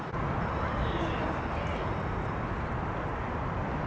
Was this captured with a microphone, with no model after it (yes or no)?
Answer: yes